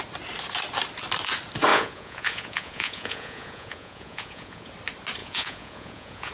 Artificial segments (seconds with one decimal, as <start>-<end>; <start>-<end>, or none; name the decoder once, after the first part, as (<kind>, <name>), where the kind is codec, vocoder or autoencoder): 1.7-4.7 (vocoder, Vocos); 5.2-6.3